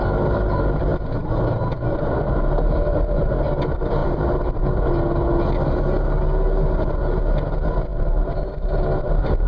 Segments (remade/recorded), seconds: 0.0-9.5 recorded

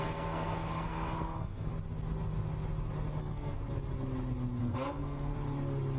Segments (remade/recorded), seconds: 0.0-1.7 remade; 1.7-3.2 recorded; 3.2-3.6 remade; 3.6-4.6 recorded; 4.6-5.3 remade; 5.3-6.0 recorded